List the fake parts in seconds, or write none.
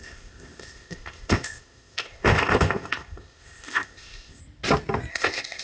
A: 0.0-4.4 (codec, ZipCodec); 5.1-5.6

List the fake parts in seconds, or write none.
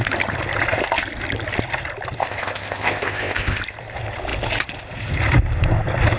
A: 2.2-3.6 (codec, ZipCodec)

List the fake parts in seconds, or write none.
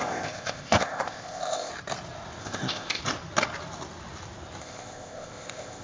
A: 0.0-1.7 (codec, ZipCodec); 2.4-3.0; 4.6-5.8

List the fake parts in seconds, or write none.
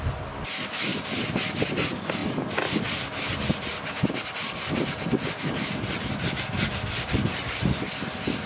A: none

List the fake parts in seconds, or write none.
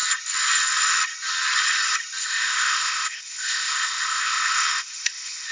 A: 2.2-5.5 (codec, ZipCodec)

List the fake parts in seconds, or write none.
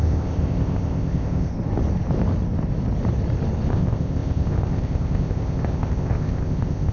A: 0.0-1.5 (codec, ZipCodec); 3.7-6.9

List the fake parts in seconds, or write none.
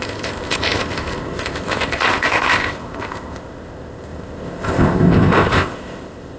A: 0.0-6.4 (codec, ZipCodec)